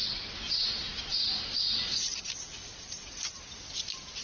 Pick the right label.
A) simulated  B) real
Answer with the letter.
B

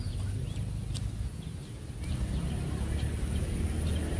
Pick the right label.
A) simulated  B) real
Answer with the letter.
B